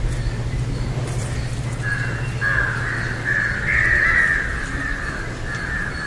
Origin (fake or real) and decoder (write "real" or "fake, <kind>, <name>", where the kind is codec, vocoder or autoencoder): real